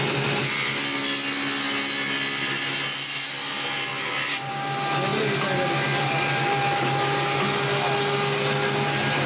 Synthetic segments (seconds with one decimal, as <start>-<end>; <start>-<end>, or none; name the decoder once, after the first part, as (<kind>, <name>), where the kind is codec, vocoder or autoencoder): none